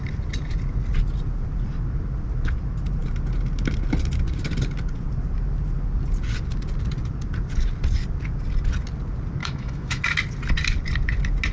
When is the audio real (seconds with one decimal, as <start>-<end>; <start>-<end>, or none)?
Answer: 0.0-9.4; 10.0-11.5